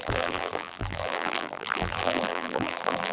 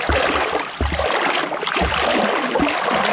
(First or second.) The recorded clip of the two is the second